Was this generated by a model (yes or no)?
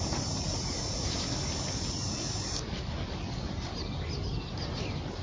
no